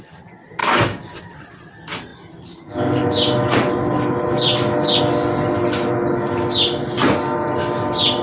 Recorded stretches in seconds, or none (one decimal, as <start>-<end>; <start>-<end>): 0.0-0.6; 1.2-8.2